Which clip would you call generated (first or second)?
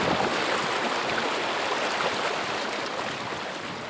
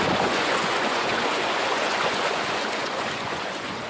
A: second